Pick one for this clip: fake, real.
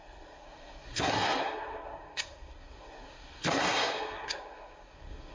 fake